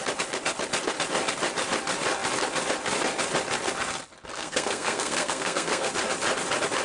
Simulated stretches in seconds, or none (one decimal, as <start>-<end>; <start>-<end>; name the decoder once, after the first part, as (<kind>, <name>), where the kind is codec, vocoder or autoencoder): 4.3-5.9 (codec, SNAC)